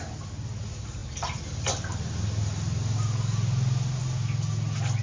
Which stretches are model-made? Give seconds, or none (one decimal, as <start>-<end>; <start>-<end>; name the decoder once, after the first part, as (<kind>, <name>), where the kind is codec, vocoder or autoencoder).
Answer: none